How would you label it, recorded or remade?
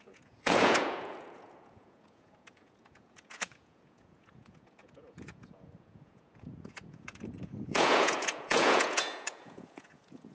remade